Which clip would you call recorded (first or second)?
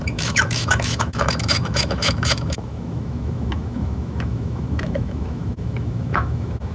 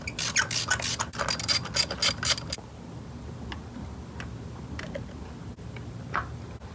second